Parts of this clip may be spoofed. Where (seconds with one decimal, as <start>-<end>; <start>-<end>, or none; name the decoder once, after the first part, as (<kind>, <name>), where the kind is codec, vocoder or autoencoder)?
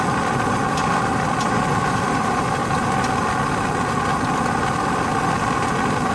0.0-2.6 (vocoder, BigVGAN v2)